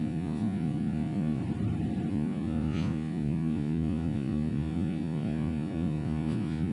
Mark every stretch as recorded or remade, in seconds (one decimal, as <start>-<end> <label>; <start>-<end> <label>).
0.0-1.4 remade; 1.4-2.1 recorded; 2.1-6.7 remade